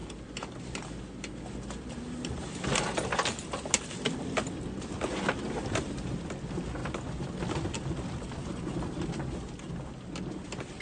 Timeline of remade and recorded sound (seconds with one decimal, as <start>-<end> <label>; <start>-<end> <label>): 0.0-10.8 recorded